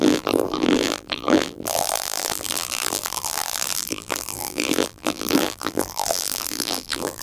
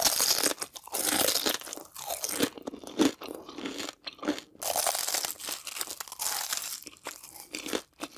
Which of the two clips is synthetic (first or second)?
first